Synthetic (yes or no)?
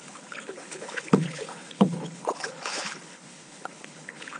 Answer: yes